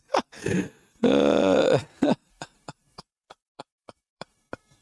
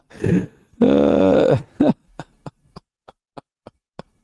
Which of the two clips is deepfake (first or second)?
first